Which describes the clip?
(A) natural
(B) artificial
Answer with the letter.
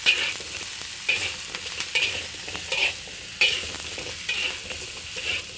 A